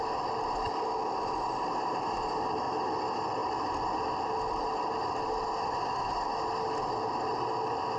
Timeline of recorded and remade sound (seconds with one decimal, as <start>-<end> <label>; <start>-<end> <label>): 0.0-8.0 recorded